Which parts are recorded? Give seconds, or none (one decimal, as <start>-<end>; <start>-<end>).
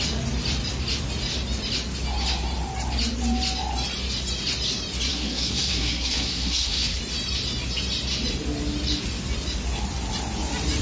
0.0-5.1; 7.0-10.8